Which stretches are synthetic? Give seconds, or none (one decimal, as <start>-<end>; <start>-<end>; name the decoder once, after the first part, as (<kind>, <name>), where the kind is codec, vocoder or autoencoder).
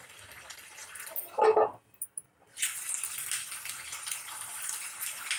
none